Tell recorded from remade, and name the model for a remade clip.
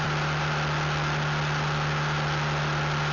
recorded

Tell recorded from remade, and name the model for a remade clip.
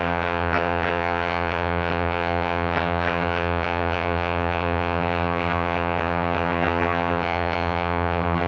remade, vocoder, HiFi-GAN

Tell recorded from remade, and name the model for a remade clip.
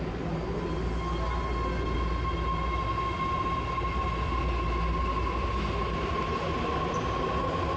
recorded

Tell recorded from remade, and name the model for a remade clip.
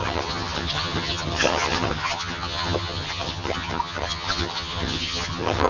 remade, vocoder, HiFi-GAN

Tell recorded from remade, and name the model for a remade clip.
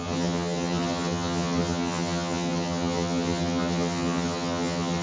remade, vocoder, HiFi-GAN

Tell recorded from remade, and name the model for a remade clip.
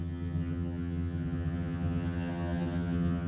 remade, vocoder, HiFi-GAN